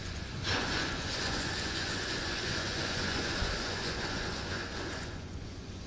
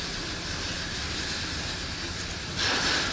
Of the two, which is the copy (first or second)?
first